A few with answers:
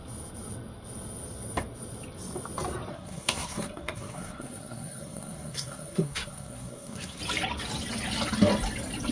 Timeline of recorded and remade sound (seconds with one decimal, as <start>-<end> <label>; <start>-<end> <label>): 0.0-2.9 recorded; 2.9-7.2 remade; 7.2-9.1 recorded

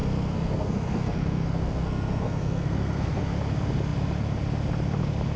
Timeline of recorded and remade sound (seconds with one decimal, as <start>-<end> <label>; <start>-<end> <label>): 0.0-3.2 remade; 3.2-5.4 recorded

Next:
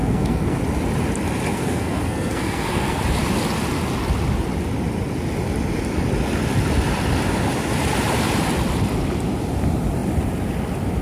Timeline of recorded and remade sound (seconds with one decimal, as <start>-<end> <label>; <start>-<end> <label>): 0.0-0.6 remade; 0.6-1.5 recorded; 1.5-3.0 remade; 3.0-11.0 recorded

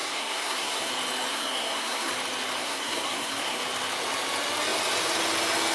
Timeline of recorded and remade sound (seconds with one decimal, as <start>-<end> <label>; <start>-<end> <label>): 0.0-0.9 remade; 0.9-1.3 recorded; 1.3-2.1 remade; 2.1-2.6 recorded; 2.6-3.6 remade; 3.6-5.7 recorded